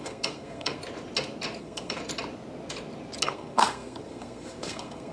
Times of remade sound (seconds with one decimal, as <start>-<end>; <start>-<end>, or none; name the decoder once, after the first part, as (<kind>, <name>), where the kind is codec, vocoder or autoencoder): 0.0-0.8 (codec, SNAC); 1.6-2.0; 3.2-5.1

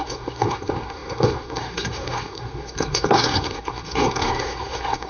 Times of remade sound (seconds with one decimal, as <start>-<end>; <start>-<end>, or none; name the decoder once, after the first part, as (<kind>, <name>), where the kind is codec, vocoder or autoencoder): 0.0-5.1 (codec, SNAC)